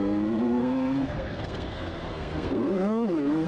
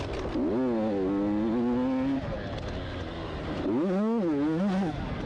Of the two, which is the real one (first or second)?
second